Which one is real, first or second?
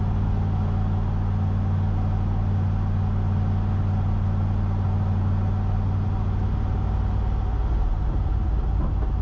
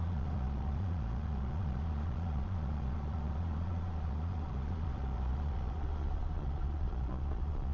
first